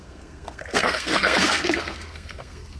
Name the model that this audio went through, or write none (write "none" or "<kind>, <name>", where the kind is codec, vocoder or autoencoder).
codec, SNAC